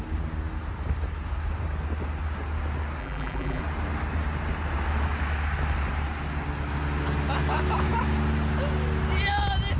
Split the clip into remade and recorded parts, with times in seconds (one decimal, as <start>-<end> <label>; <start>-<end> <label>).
0.0-3.0 recorded; 3.0-3.6 remade; 3.6-9.8 recorded